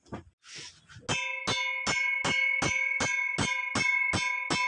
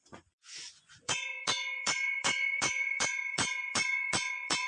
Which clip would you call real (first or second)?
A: first